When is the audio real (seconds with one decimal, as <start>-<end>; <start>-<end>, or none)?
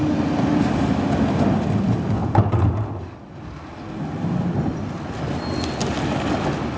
0.0-6.8